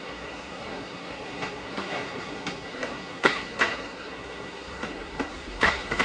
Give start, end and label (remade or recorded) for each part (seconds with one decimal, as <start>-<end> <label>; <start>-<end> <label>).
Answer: 0.0-6.0 remade